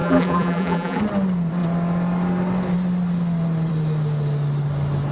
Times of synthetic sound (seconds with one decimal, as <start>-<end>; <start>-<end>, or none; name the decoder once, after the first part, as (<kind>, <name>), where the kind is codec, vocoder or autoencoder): 0.0-1.0 (vocoder, BigVGAN v2)